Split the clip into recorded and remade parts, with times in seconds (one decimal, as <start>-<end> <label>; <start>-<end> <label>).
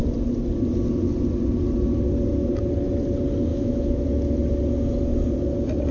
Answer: 0.0-3.5 recorded; 3.5-4.0 remade; 4.0-5.9 recorded